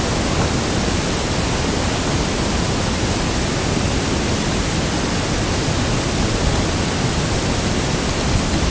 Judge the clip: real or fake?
real